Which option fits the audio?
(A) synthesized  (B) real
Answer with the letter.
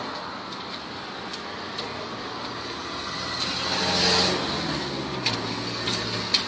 B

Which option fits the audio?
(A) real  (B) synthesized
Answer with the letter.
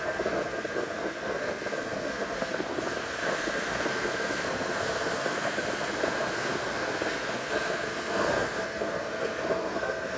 B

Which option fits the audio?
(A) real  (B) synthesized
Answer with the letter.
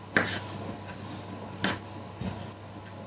A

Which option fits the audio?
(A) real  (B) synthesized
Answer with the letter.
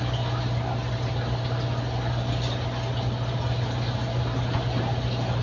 A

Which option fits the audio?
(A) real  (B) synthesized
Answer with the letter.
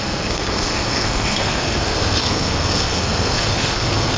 B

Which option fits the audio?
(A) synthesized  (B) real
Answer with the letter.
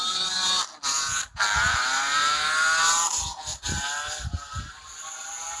B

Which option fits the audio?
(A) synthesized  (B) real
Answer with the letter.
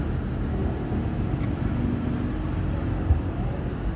B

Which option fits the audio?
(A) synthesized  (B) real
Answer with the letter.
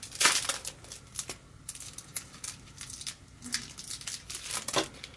B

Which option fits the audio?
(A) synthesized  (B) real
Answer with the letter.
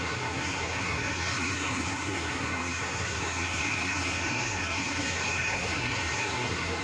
A